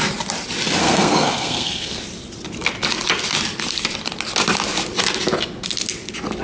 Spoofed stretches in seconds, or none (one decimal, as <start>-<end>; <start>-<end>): 0.8-2.0